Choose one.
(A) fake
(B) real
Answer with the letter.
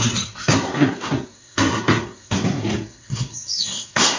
A